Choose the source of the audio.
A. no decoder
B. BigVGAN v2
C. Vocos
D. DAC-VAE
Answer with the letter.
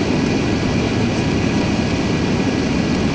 B